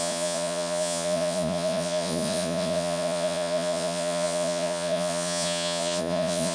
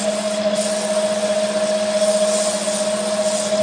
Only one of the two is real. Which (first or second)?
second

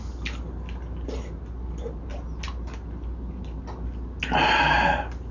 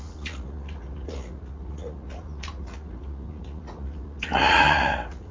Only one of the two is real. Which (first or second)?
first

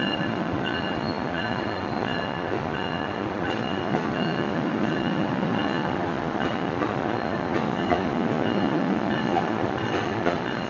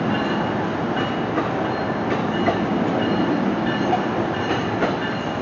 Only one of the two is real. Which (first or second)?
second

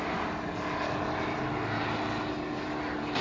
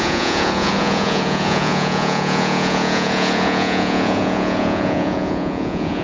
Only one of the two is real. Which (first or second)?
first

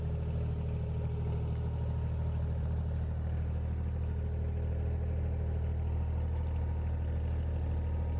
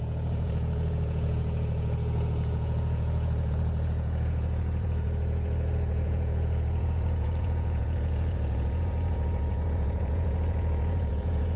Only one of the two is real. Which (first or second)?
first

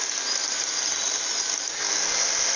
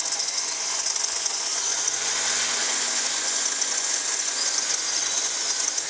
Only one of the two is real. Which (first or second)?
first